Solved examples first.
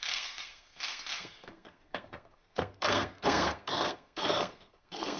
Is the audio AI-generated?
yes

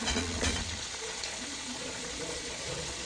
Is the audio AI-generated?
yes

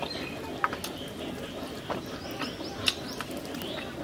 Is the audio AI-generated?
no